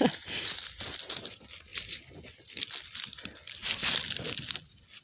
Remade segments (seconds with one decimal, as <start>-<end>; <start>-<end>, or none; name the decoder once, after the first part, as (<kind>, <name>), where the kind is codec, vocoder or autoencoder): none